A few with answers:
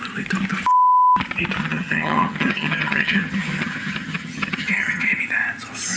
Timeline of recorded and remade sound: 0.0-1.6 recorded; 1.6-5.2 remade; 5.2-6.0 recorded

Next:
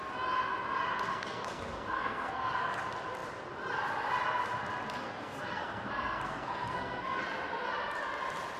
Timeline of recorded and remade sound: 0.0-1.1 recorded; 1.1-2.8 remade; 2.8-5.0 recorded; 5.0-7.2 remade; 7.2-8.6 recorded

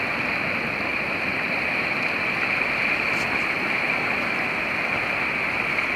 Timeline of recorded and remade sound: 0.0-0.9 recorded; 0.9-3.5 remade; 3.5-6.0 recorded

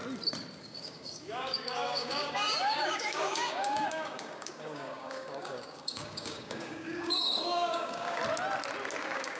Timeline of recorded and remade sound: 0.0-0.6 recorded; 0.6-8.2 remade; 8.2-9.0 recorded; 9.0-9.4 remade

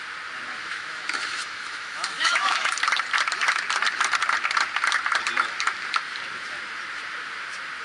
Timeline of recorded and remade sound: 0.0-0.5 recorded; 0.5-2.7 remade; 2.7-7.8 recorded

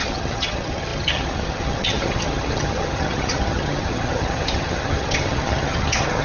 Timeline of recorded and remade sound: 0.0-6.2 remade